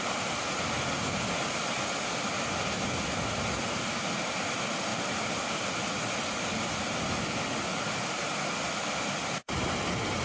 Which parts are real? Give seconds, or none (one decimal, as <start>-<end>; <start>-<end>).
0.0-10.2